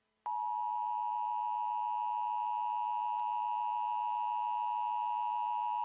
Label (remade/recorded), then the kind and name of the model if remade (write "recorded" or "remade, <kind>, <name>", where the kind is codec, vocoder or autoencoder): recorded